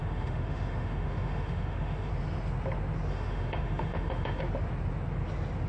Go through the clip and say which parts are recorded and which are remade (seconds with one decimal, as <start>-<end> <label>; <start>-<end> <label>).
0.0-2.1 remade; 2.1-3.1 recorded; 3.1-4.4 remade; 4.4-5.7 recorded